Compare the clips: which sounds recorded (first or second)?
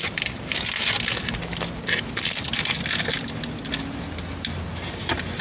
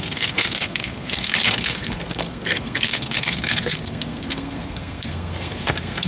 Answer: first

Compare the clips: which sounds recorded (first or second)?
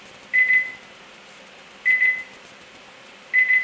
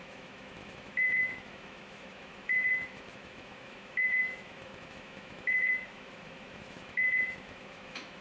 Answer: first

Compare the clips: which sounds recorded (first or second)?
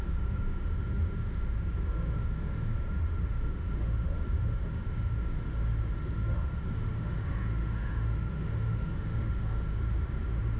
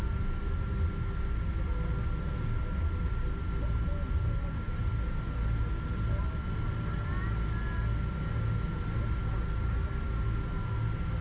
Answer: second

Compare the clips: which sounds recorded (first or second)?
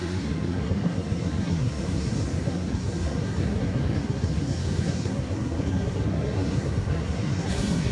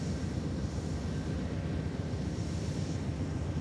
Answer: second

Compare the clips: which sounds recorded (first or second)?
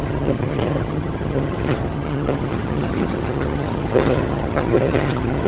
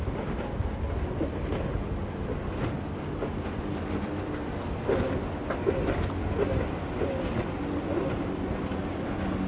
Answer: second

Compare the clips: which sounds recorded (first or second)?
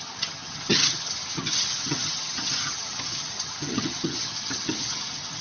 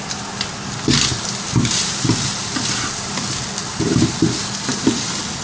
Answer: second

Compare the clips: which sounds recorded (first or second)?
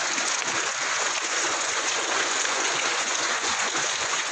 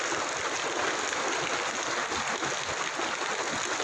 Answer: second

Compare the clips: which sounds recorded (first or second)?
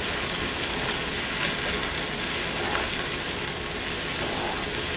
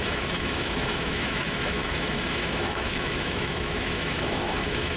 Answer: first